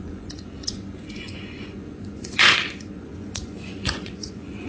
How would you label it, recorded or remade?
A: remade